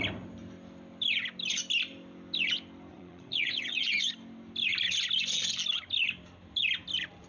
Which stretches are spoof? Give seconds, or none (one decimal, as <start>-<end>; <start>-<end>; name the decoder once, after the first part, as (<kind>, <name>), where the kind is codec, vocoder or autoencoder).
2.9-4.1 (vocoder, Vocos)